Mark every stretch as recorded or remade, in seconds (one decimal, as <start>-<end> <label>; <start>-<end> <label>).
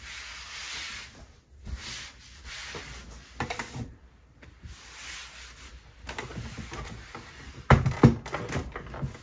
0.0-9.2 recorded